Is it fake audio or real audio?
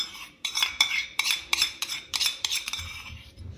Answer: fake